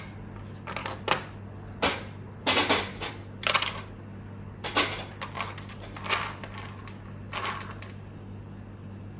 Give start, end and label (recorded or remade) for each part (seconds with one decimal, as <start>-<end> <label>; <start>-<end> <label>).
0.0-9.2 recorded